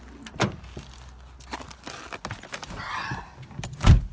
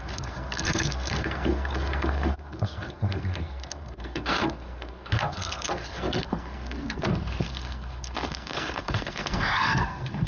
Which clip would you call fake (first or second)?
second